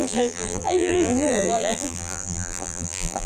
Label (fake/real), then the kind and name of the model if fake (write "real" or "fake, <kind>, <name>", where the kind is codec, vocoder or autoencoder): fake, vocoder, BigVGAN v2